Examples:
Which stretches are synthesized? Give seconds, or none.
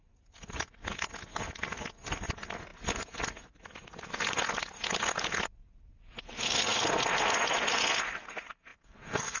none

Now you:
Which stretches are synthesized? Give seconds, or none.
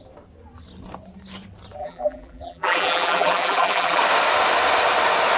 1.8-4.0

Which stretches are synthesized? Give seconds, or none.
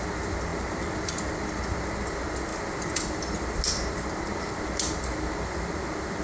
none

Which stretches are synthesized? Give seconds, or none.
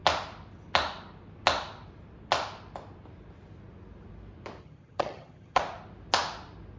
4.6-5.6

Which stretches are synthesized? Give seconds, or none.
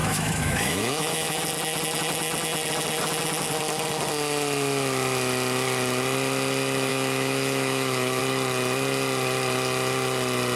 0.0-1.4; 6.9-8.2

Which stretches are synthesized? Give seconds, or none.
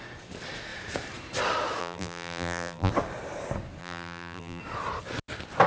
1.8-2.9; 3.8-4.6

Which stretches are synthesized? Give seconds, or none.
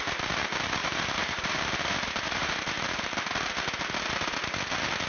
0.8-3.2